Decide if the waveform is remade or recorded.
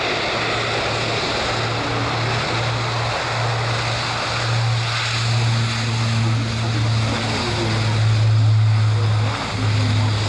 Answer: recorded